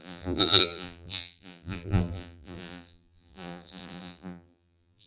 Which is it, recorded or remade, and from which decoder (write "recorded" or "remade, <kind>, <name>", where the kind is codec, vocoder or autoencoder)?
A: remade, vocoder, BigVGAN v2